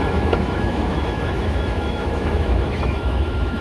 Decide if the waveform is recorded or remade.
remade